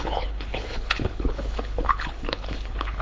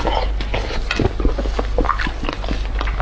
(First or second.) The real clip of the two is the second